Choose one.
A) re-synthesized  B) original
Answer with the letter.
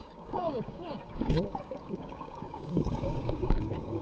A